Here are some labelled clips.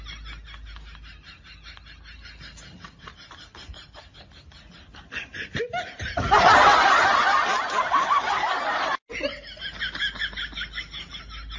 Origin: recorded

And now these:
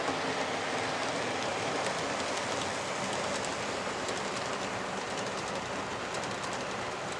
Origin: recorded